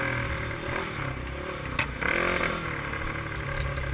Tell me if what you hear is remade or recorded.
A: recorded